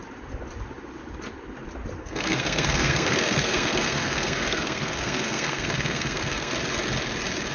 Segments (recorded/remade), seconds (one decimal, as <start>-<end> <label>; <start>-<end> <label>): 0.0-2.0 recorded; 2.0-6.5 remade; 6.5-7.5 recorded